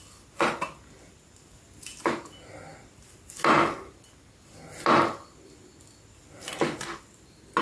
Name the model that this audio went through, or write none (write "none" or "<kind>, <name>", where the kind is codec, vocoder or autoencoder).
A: none